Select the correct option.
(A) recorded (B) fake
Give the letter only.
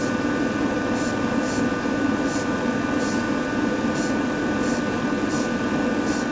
A